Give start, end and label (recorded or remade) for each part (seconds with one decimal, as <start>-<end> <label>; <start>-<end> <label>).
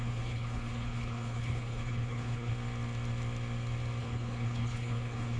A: 0.0-2.5 remade; 2.5-4.0 recorded; 4.0-5.4 remade